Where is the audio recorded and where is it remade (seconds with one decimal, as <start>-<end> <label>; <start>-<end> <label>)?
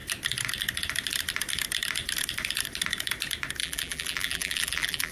0.0-3.6 recorded; 3.6-5.1 remade